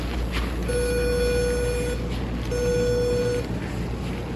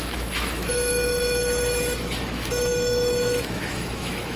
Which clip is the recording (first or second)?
first